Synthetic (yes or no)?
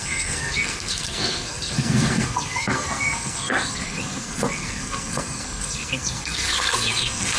yes